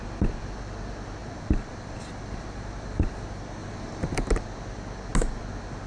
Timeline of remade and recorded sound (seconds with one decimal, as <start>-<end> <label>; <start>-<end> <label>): 0.0-1.2 recorded; 1.2-3.2 remade; 3.2-3.6 recorded; 3.6-4.3 remade; 4.3-5.9 recorded